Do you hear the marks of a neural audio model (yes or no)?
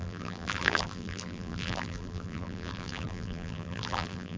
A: yes